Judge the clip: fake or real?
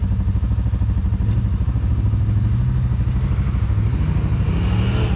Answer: real